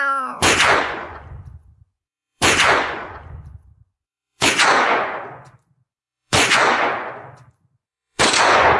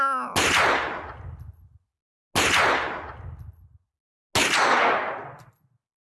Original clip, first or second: second